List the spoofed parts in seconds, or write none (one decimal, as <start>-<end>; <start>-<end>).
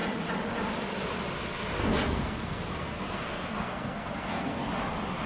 1.8-4.7